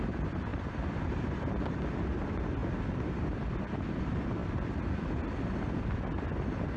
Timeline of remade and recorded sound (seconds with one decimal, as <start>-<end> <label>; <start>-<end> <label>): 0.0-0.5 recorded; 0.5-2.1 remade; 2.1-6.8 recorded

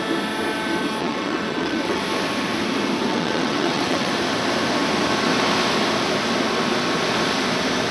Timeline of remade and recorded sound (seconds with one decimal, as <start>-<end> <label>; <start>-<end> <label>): 0.0-1.0 recorded; 1.0-2.0 remade; 2.0-3.1 recorded; 3.1-4.1 remade; 4.1-7.9 recorded

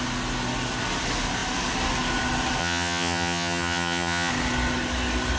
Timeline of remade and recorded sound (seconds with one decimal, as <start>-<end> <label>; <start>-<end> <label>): 0.0-2.6 recorded; 2.6-4.3 remade; 4.3-5.4 recorded

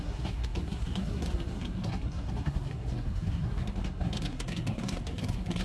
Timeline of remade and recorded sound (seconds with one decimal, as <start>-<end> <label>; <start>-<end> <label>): 0.0-5.6 remade

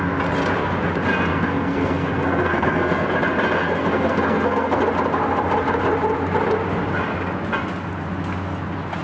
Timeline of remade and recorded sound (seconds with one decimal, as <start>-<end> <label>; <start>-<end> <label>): 0.0-1.3 recorded; 1.3-3.1 remade; 3.1-3.6 recorded; 3.6-4.8 remade; 4.8-9.0 recorded